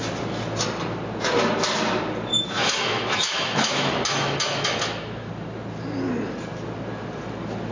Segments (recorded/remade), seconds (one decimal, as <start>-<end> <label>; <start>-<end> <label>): 0.0-2.3 recorded; 2.3-5.3 remade; 5.3-7.7 recorded